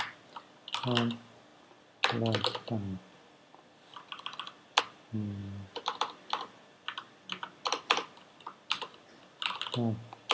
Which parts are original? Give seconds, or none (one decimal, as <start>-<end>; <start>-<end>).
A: 0.0-10.3